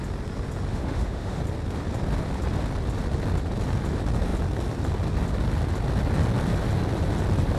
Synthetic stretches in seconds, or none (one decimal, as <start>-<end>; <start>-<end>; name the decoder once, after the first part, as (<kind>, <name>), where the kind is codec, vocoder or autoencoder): 0.7-1.4 (autoencoder, DAC-VAE)